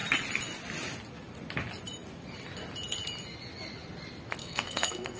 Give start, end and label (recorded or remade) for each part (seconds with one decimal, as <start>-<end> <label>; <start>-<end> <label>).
0.0-4.4 recorded; 4.4-5.2 remade